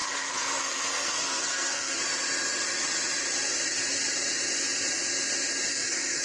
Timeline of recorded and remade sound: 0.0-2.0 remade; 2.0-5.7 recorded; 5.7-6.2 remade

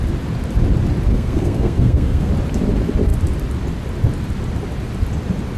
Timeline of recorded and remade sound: 0.0-1.1 recorded; 1.1-2.3 remade; 2.3-5.6 recorded

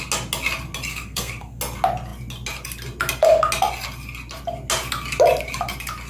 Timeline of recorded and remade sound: 0.0-0.9 recorded; 0.9-1.6 remade; 1.6-6.1 recorded

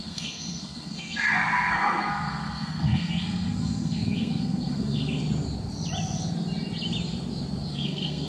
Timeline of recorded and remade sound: 0.0-5.2 remade; 5.2-7.7 recorded; 7.7-8.3 remade

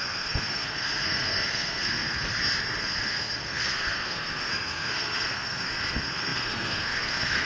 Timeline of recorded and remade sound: 0.0-2.3 remade; 2.3-2.8 recorded; 2.8-7.4 remade

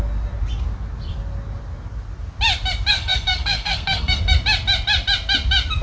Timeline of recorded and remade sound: 0.0-2.9 recorded; 2.9-4.2 remade; 4.2-5.8 recorded